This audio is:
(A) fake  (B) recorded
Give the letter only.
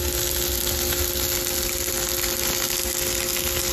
B